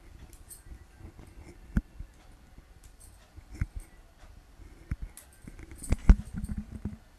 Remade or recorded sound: recorded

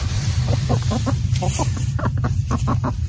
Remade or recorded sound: remade